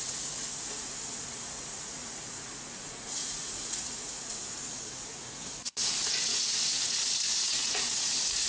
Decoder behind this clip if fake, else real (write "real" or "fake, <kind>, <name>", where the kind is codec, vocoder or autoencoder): fake, vocoder, Vocos